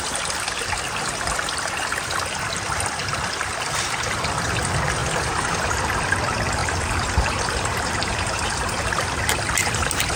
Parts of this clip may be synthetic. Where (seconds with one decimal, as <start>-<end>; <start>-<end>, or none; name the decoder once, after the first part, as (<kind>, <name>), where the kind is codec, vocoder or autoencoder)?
5.0-5.7 (vocoder, BigVGAN v2); 6.6-9.0